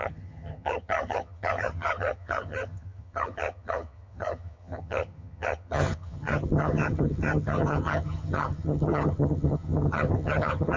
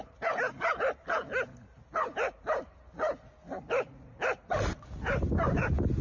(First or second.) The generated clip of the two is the first